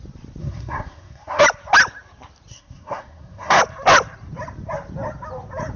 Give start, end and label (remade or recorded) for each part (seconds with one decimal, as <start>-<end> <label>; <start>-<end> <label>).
0.0-0.4 recorded; 0.4-1.4 remade; 1.4-2.5 recorded; 2.5-3.6 remade; 3.6-5.8 recorded